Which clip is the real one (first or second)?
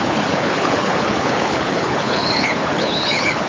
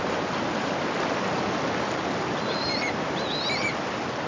second